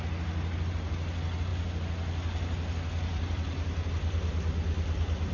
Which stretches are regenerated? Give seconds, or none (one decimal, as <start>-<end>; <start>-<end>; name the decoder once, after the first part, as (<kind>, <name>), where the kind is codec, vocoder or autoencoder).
none